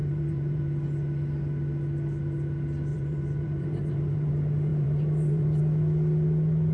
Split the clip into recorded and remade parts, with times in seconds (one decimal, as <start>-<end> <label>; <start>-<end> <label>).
0.0-0.6 remade; 0.6-2.9 recorded; 2.9-4.3 remade; 4.3-4.7 recorded; 4.7-5.6 remade; 5.6-6.7 recorded